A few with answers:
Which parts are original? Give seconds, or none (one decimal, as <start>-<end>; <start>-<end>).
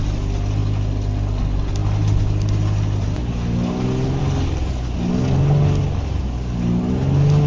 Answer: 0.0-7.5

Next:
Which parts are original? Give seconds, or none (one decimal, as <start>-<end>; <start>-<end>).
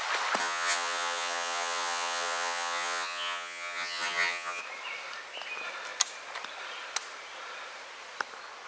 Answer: 0.0-0.4; 4.6-8.7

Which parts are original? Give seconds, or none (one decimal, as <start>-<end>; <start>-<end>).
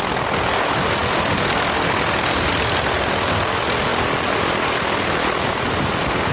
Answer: 0.0-6.3